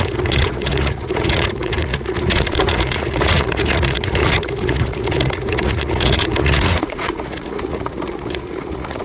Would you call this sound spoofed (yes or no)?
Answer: yes